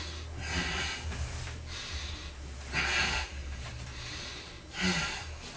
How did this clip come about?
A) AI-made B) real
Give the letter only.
B